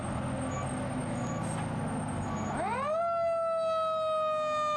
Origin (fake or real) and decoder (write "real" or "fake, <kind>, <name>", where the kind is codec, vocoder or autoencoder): real